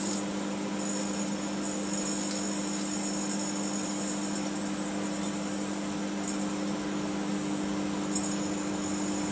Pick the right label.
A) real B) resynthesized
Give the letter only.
A